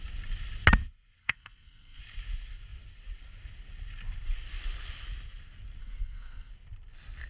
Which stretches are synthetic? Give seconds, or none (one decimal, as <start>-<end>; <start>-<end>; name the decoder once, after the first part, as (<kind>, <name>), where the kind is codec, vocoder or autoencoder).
1.2-2.0 (codec, SNAC); 5.8-6.5